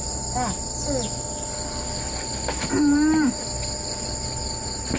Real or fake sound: real